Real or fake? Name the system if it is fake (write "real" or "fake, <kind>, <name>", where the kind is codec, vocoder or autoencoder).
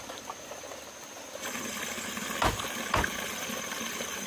real